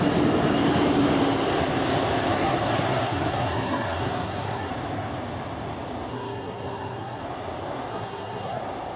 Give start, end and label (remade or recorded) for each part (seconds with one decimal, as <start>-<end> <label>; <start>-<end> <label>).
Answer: 0.0-2.3 recorded; 2.3-4.7 remade; 4.7-6.1 recorded; 6.1-7.2 remade; 7.2-7.9 recorded; 7.9-8.6 remade; 8.6-9.0 recorded